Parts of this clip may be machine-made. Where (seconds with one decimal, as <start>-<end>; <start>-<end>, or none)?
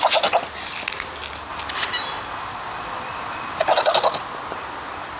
none